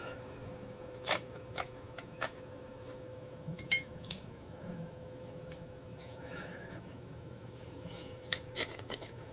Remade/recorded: remade